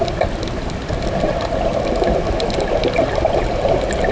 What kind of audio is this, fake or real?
real